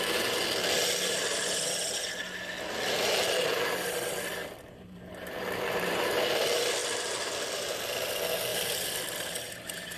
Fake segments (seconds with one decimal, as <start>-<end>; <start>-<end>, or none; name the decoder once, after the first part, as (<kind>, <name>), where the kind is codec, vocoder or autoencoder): 4.4-5.9 (vocoder, BigVGAN v2); 6.8-7.8; 8.5-9.1